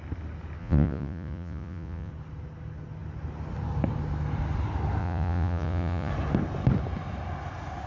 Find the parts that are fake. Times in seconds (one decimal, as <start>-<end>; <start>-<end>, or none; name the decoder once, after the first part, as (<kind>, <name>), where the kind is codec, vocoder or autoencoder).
0.6-2.1 (vocoder, Vocos); 5.0-6.1